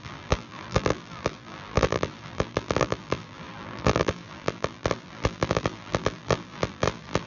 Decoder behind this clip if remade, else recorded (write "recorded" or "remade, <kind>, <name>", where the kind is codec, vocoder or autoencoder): remade, vocoder, BigVGAN v2